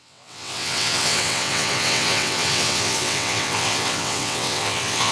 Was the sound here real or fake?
fake